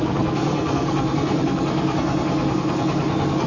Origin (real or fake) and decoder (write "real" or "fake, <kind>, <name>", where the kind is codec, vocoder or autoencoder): fake, codec, SNAC